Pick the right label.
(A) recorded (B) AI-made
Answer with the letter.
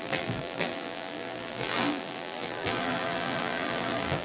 B